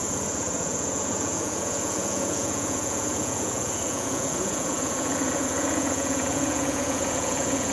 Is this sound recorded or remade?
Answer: remade